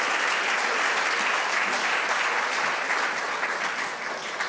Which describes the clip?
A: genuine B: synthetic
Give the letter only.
A